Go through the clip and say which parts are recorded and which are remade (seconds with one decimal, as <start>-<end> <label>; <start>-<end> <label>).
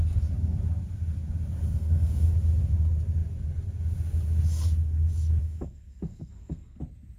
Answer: 0.0-1.7 recorded; 1.7-2.3 remade; 2.3-5.4 recorded; 5.4-6.8 remade; 6.8-7.2 recorded